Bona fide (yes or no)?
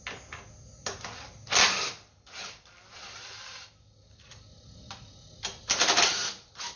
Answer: yes